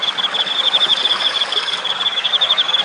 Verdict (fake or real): fake